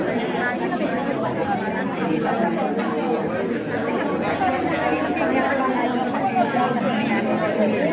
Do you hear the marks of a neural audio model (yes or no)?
no